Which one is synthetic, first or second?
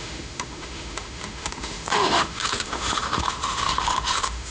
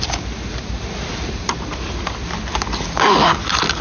first